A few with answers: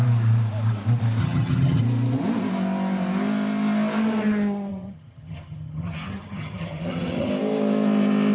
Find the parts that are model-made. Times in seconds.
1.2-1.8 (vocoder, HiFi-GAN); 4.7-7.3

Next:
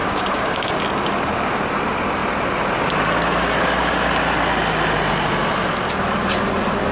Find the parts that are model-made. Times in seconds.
0.0-0.8 (codec, DAC)

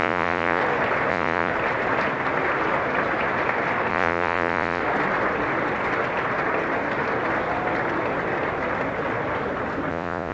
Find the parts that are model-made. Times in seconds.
0.0-0.6 (vocoder, Vocos); 1.1-1.5; 3.9-4.8; 9.9-10.3

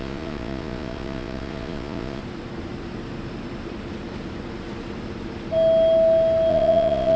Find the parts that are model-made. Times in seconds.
0.0-2.2 (vocoder, Vocos); 6.5-7.2

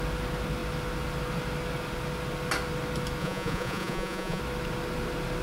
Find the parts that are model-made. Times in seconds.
3.2-4.4 (vocoder, Vocos)

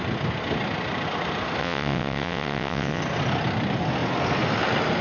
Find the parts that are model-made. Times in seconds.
1.6-3.0 (vocoder, WaveNeXt)

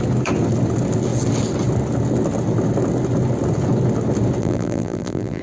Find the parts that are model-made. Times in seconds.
4.4-5.4 (vocoder, BigVGAN v2)